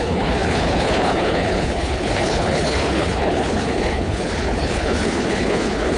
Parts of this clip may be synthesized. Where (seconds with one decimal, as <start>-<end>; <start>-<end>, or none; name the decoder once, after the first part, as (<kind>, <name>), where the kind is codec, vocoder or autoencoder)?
0.0-6.0 (codec, HILCodec)